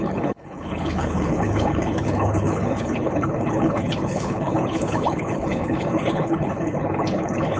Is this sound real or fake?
fake